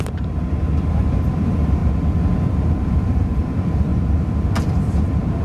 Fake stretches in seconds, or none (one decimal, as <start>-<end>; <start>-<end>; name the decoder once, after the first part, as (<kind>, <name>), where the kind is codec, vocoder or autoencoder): 0.0-0.4 (vocoder, BigVGAN v2); 1.3-1.8; 2.6-3.9